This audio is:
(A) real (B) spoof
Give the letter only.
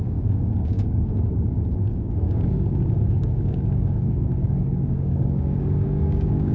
B